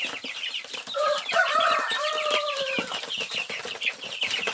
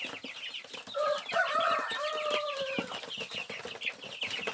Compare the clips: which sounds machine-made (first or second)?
first